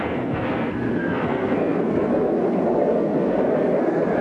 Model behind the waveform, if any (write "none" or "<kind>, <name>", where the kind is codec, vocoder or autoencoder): codec, SNAC